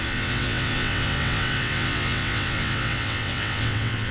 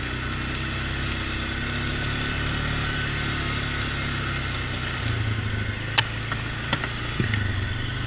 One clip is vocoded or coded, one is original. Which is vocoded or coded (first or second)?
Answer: first